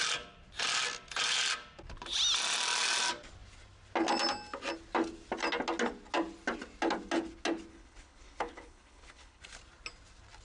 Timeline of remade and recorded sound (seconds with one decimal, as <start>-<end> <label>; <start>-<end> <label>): 0.0-7.7 recorded; 7.7-9.4 remade; 9.4-10.4 recorded